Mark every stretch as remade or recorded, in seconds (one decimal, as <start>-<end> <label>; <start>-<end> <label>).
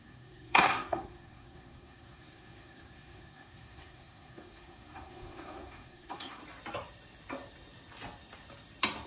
0.0-6.4 remade; 6.4-9.1 recorded